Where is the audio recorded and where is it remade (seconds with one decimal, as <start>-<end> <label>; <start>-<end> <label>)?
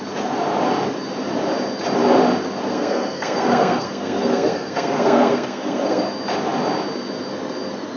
0.0-2.7 recorded; 2.7-6.0 remade; 6.0-8.0 recorded